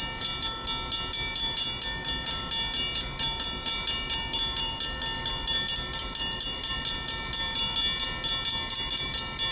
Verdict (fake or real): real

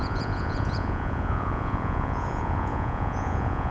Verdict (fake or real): fake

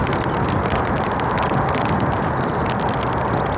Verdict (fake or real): real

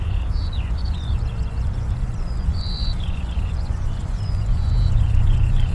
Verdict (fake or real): fake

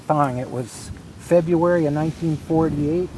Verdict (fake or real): real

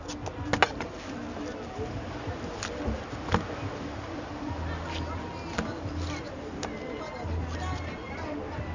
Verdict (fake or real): real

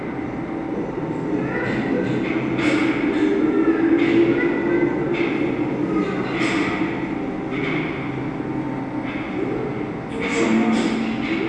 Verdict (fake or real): real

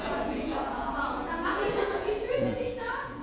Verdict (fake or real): fake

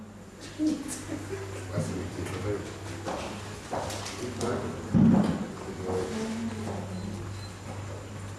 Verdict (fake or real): real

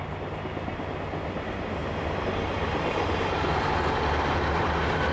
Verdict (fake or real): real